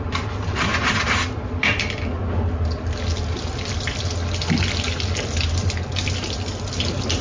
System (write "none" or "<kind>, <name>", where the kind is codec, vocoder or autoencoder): none